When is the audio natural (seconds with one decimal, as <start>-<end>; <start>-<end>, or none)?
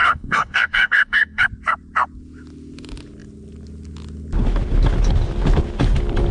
1.4-6.3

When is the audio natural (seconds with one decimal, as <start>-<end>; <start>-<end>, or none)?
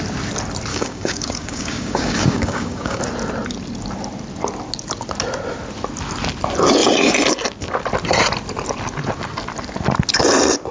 0.0-0.7; 3.0-10.7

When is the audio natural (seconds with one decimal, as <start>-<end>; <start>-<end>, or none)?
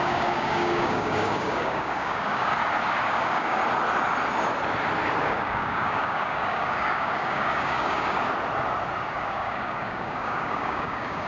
2.5-3.0; 3.6-5.2; 8.2-9.1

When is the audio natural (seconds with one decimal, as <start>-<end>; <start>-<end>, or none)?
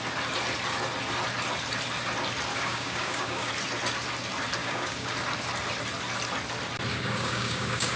0.0-2.5; 3.5-4.6; 5.1-6.9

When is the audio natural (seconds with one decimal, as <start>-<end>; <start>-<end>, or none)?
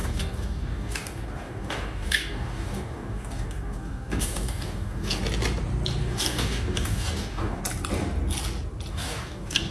5.2-6.0; 7.6-8.9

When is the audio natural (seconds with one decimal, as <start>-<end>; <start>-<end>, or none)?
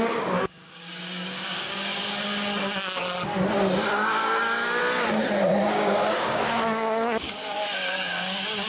2.0-3.9; 4.8-5.7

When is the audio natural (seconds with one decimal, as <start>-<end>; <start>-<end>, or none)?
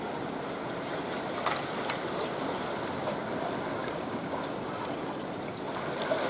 0.0-3.8; 4.7-6.3